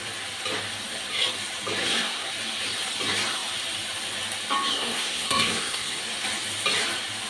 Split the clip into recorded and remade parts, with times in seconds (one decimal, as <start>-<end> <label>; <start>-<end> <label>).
0.0-1.8 recorded; 1.8-2.3 remade; 2.3-4.7 recorded; 4.7-6.0 remade; 6.0-7.3 recorded